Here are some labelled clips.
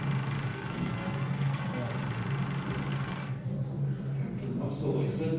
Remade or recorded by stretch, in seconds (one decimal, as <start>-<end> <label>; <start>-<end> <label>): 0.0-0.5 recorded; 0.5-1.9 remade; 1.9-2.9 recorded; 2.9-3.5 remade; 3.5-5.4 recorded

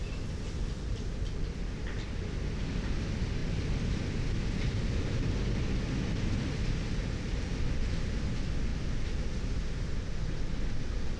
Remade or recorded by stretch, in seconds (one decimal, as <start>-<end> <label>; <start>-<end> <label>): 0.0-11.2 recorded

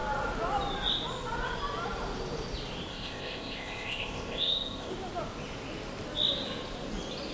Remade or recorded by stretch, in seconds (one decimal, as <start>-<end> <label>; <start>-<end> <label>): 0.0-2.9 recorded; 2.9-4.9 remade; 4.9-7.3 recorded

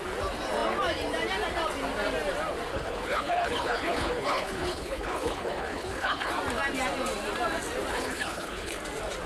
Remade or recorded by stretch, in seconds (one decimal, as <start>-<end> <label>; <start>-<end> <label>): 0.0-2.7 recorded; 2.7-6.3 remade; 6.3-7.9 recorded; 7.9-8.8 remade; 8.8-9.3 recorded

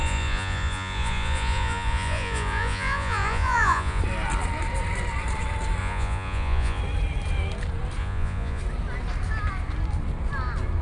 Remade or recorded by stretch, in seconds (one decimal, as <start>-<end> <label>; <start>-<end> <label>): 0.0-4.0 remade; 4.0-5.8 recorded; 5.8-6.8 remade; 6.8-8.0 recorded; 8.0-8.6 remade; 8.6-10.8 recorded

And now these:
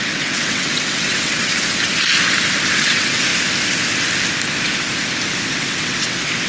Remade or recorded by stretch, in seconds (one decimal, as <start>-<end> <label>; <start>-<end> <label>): 0.0-1.5 remade; 1.5-2.7 recorded; 2.7-3.3 remade; 3.3-5.5 recorded; 5.5-6.5 remade